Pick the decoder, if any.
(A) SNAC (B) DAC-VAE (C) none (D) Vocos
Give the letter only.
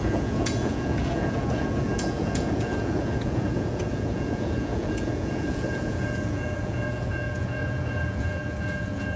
D